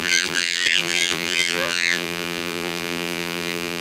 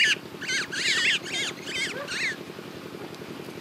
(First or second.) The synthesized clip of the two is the first